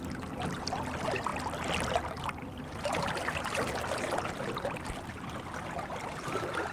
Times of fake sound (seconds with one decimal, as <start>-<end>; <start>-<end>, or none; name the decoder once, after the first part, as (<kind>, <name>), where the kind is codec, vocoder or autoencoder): none